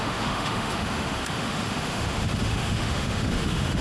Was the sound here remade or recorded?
remade